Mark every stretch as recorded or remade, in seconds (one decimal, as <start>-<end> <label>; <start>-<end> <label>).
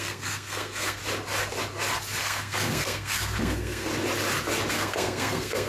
0.0-1.0 remade; 1.0-2.2 recorded; 2.2-3.9 remade; 3.9-4.7 recorded; 4.7-5.7 remade